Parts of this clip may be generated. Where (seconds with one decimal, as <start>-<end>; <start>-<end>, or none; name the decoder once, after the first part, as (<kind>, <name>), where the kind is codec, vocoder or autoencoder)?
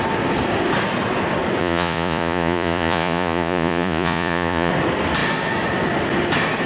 1.6-4.7 (vocoder, Vocos)